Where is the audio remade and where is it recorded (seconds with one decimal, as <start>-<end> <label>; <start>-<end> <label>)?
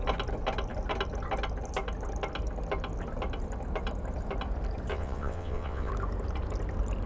0.0-4.9 recorded; 4.9-5.9 remade; 5.9-7.1 recorded